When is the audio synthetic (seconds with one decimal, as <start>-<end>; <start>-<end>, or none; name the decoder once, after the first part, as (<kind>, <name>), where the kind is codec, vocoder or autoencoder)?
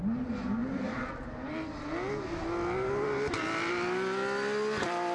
none